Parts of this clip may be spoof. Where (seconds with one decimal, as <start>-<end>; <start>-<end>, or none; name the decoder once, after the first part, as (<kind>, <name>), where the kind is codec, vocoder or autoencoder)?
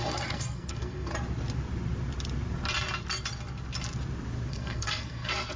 0.0-1.1 (codec, SNAC); 4.5-5.6